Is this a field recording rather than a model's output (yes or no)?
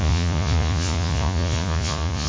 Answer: no